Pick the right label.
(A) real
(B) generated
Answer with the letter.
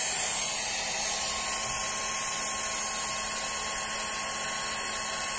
A